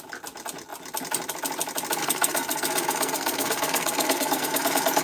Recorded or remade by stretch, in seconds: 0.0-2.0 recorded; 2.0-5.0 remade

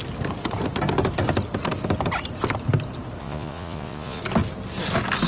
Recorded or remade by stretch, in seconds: 0.0-3.2 recorded; 3.2-4.2 remade; 4.2-5.3 recorded

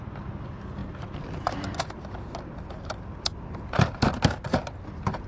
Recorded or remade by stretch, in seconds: 0.0-0.8 recorded; 0.8-2.0 remade; 2.0-5.3 recorded

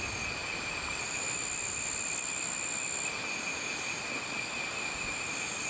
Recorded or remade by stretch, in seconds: 0.0-0.4 recorded; 0.4-2.7 remade; 2.7-5.7 recorded

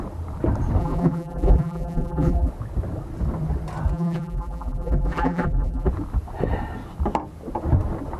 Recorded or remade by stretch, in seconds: 0.0-0.8 recorded; 0.8-2.5 remade; 2.5-3.9 recorded; 3.9-5.9 remade; 5.9-8.2 recorded